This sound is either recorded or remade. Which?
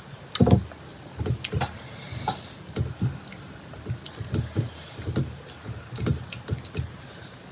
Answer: recorded